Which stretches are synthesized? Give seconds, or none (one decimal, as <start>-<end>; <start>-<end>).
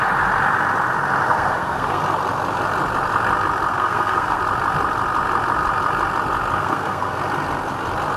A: 1.3-2.0; 3.7-4.4; 6.6-7.2